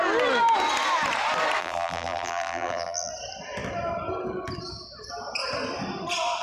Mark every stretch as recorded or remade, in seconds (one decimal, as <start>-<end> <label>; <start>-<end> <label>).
0.0-1.6 recorded; 1.6-3.1 remade; 3.1-6.4 recorded